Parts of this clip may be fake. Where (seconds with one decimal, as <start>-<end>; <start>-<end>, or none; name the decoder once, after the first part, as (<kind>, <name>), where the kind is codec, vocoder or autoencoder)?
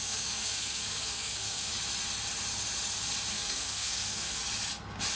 0.0-1.7 (codec, SNAC); 3.3-4.4